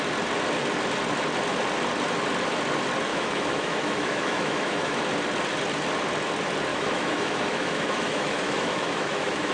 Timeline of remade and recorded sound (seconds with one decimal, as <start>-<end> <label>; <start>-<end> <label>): 0.0-3.1 recorded; 3.1-5.0 remade; 5.0-6.7 recorded; 6.7-9.5 remade